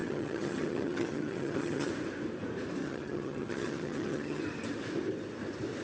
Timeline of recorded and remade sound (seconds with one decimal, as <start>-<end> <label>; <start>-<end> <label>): 0.0-1.9 remade; 1.9-2.8 recorded; 2.8-4.4 remade; 4.4-5.8 recorded